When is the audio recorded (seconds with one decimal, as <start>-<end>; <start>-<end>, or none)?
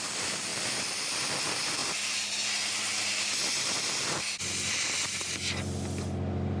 0.0-6.6